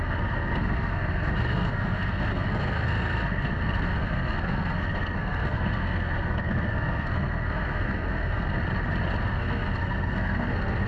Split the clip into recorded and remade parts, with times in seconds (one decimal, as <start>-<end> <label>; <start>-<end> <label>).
0.0-8.6 remade; 8.6-9.2 recorded; 9.2-10.9 remade